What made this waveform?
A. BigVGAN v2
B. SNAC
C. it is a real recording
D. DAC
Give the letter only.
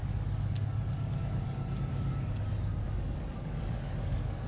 D